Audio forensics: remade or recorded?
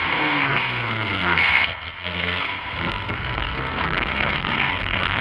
remade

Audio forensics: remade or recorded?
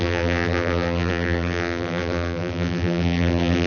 remade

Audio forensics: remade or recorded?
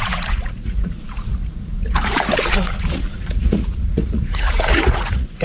remade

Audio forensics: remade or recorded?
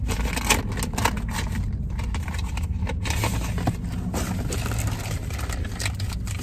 recorded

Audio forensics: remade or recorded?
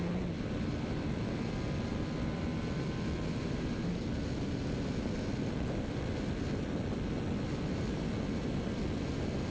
recorded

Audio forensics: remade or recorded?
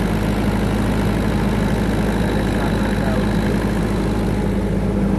recorded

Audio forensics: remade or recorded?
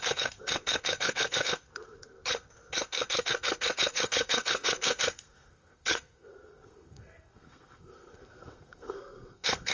remade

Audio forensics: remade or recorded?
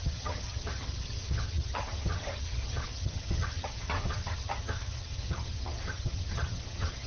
remade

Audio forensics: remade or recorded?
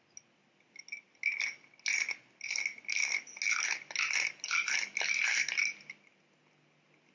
recorded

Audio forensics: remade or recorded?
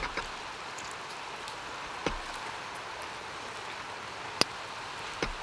recorded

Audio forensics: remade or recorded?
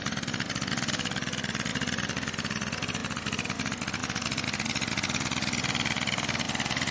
remade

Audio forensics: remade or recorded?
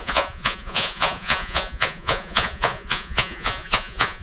remade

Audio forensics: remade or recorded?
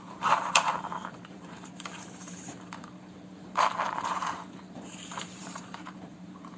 remade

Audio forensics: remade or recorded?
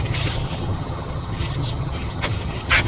remade